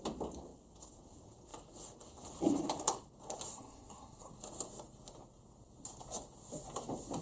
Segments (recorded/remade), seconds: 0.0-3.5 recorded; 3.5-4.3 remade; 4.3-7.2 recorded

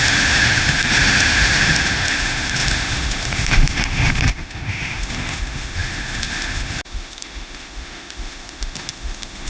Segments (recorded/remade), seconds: 0.0-9.5 remade

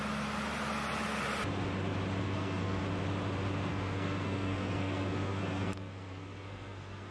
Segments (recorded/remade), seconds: 0.0-2.2 recorded; 2.2-2.8 remade; 2.8-3.7 recorded; 3.7-7.1 remade

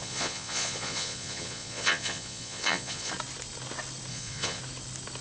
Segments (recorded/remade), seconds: 0.0-3.1 remade; 3.1-4.1 recorded; 4.1-4.6 remade; 4.6-5.2 recorded

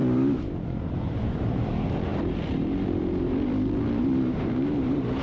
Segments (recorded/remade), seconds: 0.0-5.2 remade

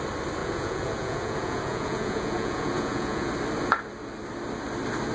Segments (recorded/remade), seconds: 0.0-0.4 recorded; 0.4-3.3 remade; 3.3-5.1 recorded